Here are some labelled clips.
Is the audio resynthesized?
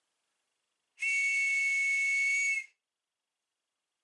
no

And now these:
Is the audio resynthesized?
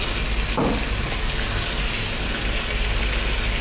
no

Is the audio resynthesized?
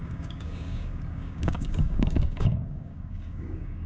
yes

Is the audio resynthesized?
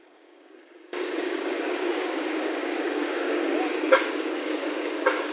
yes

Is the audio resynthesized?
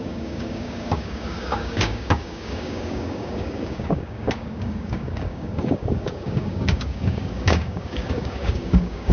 yes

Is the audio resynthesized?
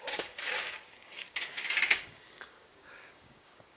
yes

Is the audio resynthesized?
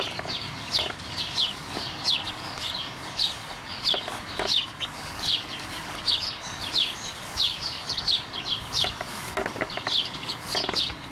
yes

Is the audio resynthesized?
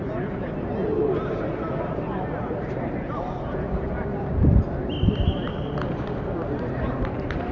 no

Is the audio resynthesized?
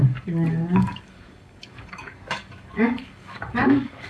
yes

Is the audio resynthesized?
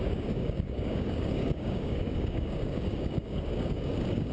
yes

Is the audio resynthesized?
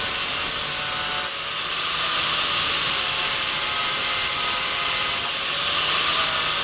no